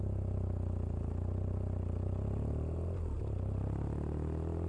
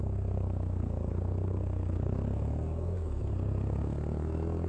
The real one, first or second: first